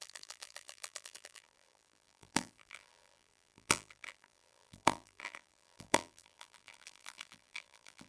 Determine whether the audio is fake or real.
fake